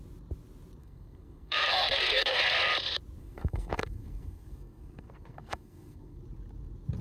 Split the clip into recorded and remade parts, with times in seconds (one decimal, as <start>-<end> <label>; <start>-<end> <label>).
0.0-0.8 recorded; 0.8-2.4 remade; 2.4-3.2 recorded; 3.2-6.2 remade; 6.2-7.0 recorded